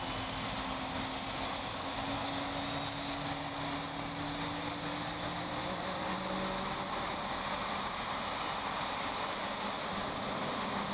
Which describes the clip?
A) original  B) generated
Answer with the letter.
A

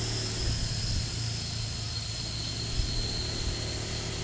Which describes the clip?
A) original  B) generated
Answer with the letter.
A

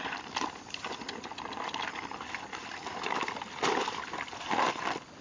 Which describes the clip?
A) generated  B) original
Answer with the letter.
B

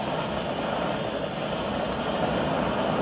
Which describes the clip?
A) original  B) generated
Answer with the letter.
A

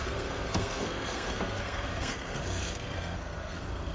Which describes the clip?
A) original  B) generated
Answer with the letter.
B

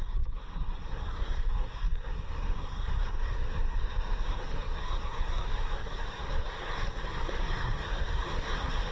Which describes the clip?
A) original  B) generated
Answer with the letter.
B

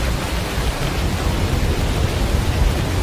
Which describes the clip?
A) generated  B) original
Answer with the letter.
B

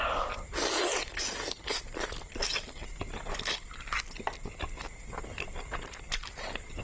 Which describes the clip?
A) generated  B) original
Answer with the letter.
B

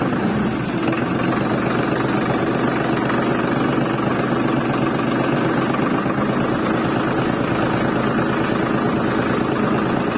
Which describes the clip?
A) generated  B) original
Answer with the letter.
B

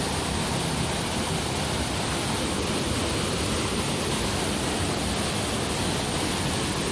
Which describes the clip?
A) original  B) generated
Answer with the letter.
A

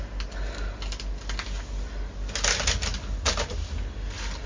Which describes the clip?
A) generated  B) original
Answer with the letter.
B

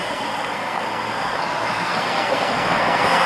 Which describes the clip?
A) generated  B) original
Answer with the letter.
A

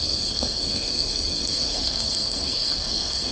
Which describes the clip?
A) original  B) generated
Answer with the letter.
B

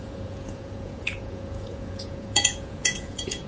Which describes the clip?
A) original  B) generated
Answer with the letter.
B